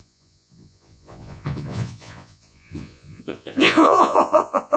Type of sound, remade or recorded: remade